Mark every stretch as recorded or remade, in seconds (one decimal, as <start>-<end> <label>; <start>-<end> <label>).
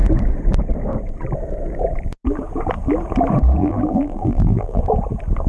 0.0-3.6 recorded; 3.6-4.8 remade; 4.8-5.5 recorded